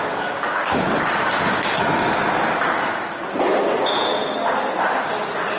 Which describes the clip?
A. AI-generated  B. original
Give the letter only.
B